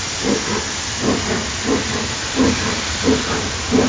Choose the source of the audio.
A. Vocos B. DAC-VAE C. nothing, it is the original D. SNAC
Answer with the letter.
C